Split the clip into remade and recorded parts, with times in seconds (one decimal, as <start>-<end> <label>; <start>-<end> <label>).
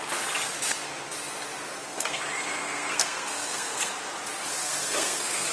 0.0-1.7 recorded; 1.7-2.2 remade; 2.2-2.6 recorded; 2.6-3.9 remade; 3.9-4.5 recorded; 4.5-5.5 remade